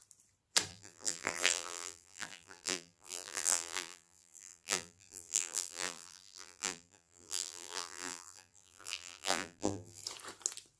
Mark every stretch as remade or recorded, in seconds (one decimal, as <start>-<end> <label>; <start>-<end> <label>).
0.0-0.7 recorded; 0.7-10.0 remade; 10.0-10.8 recorded